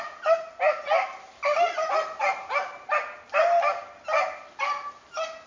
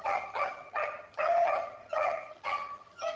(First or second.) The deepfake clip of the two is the second